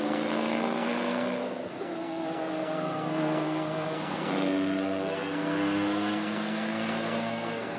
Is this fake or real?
fake